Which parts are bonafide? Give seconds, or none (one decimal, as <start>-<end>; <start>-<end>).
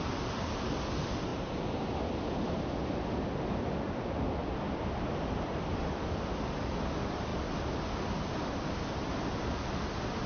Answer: 0.0-1.3; 1.9-4.4; 5.9-10.3